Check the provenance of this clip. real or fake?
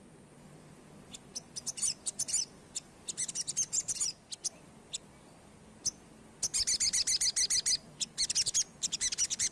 real